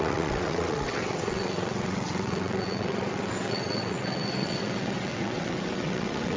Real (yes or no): no